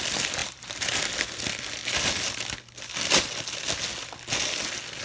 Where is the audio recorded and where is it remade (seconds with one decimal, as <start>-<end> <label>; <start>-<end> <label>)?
0.0-0.4 recorded; 0.4-1.0 remade; 1.0-5.0 recorded